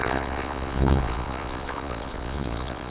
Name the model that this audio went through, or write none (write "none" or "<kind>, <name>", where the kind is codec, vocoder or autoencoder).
vocoder, Vocos